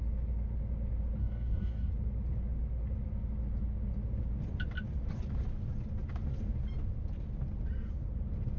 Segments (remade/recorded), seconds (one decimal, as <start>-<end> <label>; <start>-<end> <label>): 0.0-1.2 recorded; 1.2-1.9 remade; 1.9-8.6 recorded